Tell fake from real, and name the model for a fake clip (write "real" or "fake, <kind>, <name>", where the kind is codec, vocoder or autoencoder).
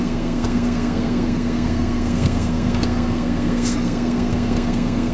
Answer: fake, codec, SNAC